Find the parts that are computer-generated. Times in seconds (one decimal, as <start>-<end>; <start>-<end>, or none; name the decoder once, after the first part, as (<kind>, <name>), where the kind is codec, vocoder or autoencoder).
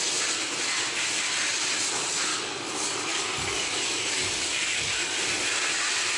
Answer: 2.3-5.2 (codec, DAC)